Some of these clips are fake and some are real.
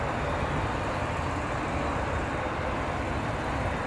real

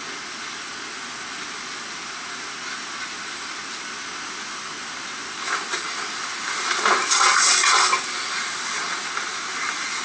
real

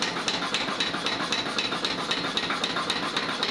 real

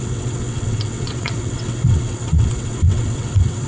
fake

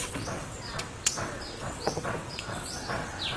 fake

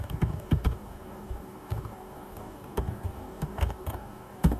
fake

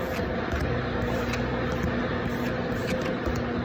real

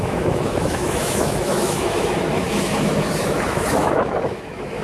fake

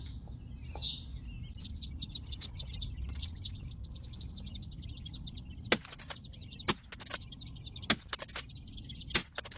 real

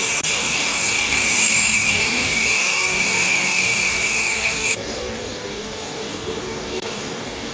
fake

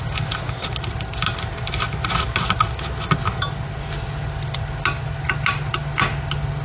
real